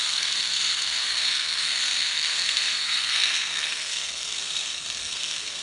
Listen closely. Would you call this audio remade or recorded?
remade